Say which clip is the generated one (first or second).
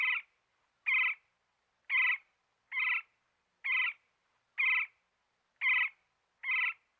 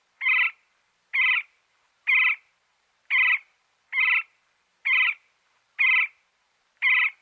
second